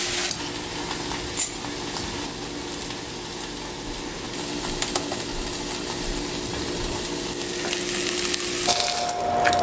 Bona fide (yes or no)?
yes